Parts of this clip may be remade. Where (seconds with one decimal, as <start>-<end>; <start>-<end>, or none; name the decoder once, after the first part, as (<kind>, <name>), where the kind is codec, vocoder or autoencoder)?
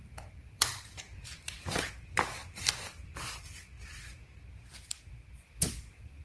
0.4-1.0 (vocoder, BigVGAN v2)